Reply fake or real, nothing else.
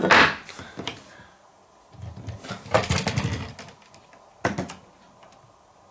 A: real